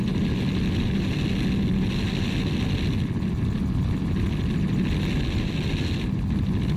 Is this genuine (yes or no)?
yes